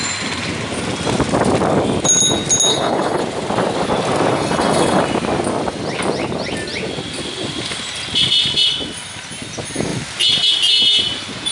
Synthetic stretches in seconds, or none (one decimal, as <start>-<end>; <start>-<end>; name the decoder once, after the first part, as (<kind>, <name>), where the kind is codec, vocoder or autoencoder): 2.7-3.2 (codec, HILCodec); 4.3-5.0